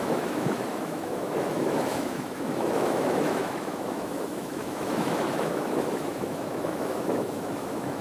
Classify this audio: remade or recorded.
remade